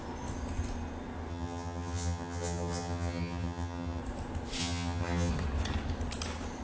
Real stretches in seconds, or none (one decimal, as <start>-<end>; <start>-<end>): 0.0-1.3; 4.0-4.6; 5.3-6.6